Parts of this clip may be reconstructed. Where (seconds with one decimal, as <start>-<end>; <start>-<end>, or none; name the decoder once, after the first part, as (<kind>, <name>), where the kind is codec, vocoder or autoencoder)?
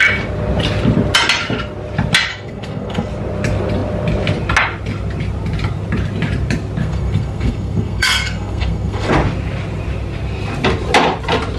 2.3-3.1 (codec, SNAC); 6.8-9.1